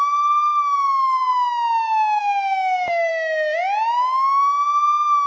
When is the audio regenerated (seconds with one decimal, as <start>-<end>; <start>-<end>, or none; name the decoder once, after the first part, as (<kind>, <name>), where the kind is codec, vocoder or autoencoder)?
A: 0.0-1.2 (codec, DAC); 2.2-3.1